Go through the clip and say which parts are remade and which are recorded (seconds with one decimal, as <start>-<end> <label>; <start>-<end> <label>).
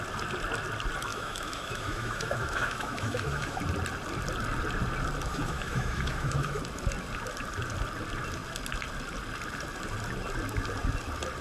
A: 0.0-1.1 recorded; 1.1-3.6 remade; 3.6-5.3 recorded; 5.3-6.6 remade; 6.6-11.4 recorded